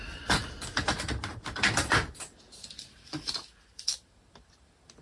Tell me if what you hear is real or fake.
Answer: real